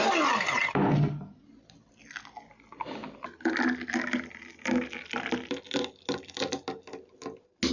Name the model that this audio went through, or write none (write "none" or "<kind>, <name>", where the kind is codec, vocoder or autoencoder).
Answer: none